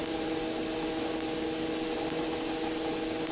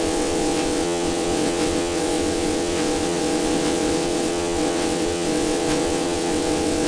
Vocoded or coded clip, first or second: second